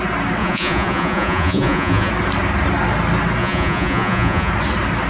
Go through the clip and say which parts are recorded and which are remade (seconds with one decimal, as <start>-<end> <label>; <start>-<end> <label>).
0.0-0.4 recorded; 0.4-2.1 remade; 2.1-3.4 recorded; 3.4-4.5 remade; 4.5-5.1 recorded